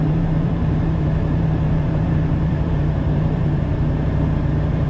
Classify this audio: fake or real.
fake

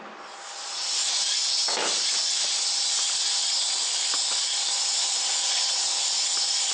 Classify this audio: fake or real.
real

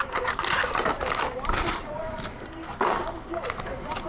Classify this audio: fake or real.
fake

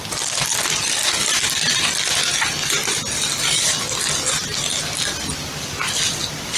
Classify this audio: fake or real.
real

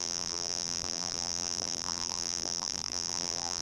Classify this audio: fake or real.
fake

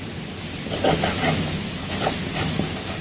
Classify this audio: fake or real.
real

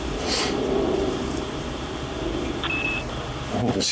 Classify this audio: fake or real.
fake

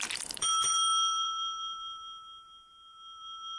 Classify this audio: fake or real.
fake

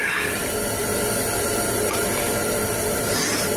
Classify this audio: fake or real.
fake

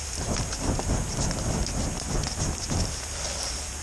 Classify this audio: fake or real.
real